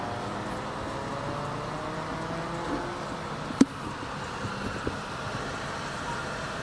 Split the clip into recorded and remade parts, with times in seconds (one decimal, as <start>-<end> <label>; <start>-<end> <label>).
0.0-6.6 recorded